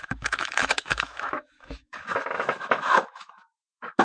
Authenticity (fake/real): fake